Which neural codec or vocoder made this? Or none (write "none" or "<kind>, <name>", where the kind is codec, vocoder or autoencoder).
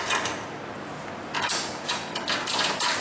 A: none